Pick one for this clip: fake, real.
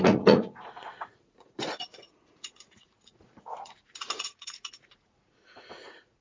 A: fake